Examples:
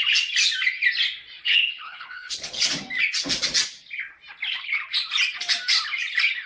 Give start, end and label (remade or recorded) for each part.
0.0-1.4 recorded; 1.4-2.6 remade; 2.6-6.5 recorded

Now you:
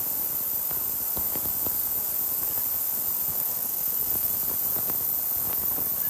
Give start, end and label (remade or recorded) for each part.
0.0-3.3 recorded; 3.3-4.3 remade; 4.3-6.1 recorded

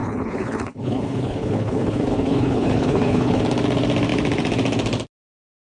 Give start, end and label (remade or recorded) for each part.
0.0-3.4 remade; 3.4-5.7 recorded

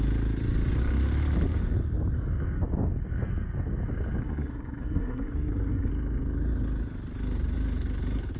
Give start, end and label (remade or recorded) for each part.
0.0-4.2 recorded; 4.2-5.9 remade; 5.9-8.4 recorded

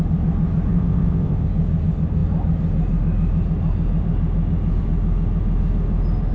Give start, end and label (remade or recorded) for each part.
0.0-0.7 recorded; 0.7-1.5 remade; 1.5-6.3 recorded

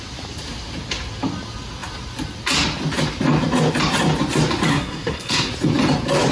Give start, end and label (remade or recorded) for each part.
0.0-4.7 recorded; 4.7-5.5 remade; 5.5-6.3 recorded

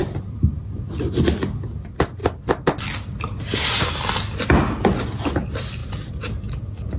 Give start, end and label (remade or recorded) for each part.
0.0-7.0 recorded

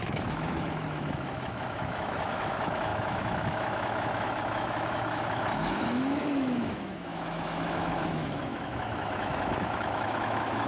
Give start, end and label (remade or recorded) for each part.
0.0-10.7 remade